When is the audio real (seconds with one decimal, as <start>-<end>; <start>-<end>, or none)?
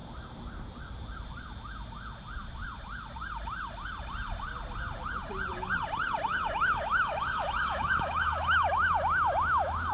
0.0-6.3